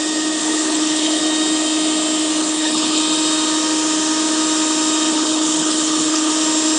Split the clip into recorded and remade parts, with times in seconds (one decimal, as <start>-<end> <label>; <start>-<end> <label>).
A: 0.0-0.4 recorded; 0.4-1.2 remade; 1.2-2.4 recorded; 2.4-3.0 remade; 3.0-5.1 recorded; 5.1-6.3 remade; 6.3-6.8 recorded